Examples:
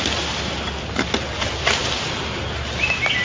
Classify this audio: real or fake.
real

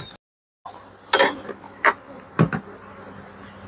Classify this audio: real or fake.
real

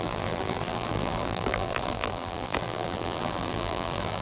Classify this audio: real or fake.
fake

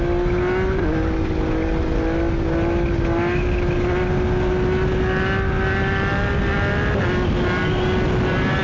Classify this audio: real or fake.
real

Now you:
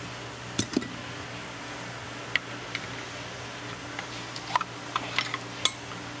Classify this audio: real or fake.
real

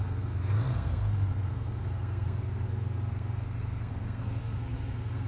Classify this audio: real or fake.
fake